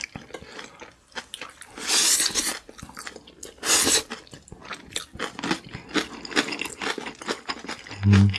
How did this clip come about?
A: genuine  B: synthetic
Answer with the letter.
A